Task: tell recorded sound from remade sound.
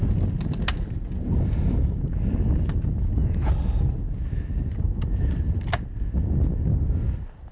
recorded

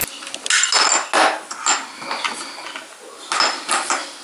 recorded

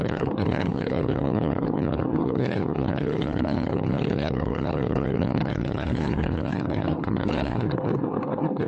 remade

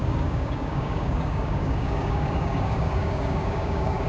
remade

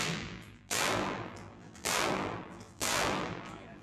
remade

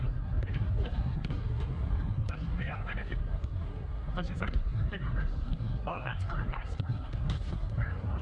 remade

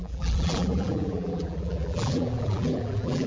remade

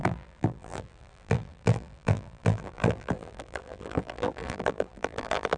remade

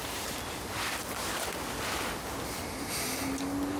recorded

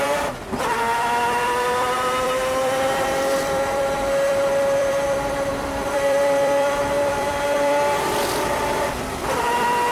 remade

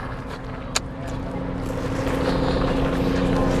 recorded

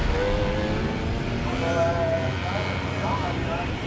recorded